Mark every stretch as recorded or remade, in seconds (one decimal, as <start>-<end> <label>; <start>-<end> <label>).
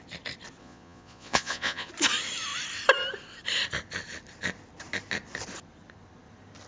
0.0-0.6 recorded; 0.6-1.9 remade; 1.9-6.7 recorded